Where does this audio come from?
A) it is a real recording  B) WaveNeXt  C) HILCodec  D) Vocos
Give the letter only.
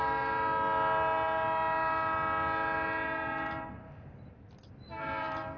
A